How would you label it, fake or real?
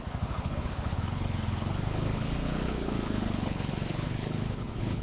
fake